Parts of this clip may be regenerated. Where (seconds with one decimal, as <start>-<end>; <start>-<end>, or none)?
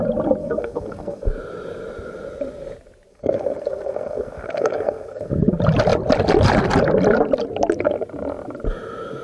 0.4-1.3; 3.1-5.3